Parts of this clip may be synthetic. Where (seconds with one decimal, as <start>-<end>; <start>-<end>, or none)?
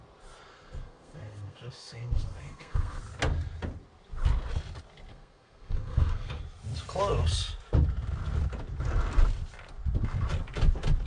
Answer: 0.5-3.0; 5.1-6.4